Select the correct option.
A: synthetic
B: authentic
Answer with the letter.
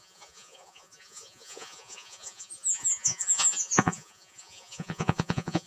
A